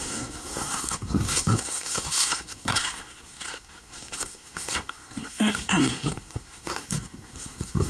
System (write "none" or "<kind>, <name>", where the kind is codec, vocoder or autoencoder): codec, SNAC